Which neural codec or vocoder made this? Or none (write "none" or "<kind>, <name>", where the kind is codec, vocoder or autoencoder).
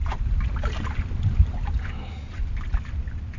none